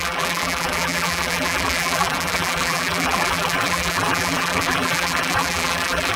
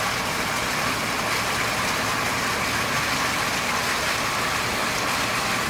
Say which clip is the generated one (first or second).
first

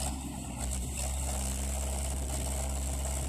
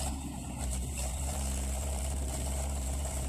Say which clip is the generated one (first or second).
second